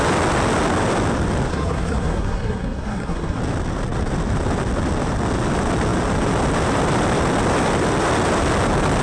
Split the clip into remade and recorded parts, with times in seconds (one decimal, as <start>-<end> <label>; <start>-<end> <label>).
0.0-1.5 recorded; 1.5-3.4 remade; 3.4-9.0 recorded